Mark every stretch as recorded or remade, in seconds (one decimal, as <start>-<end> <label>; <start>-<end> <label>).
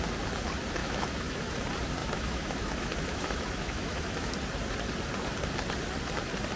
0.0-0.8 recorded; 0.8-1.5 remade; 1.5-2.0 recorded; 2.0-4.3 remade; 4.3-6.6 recorded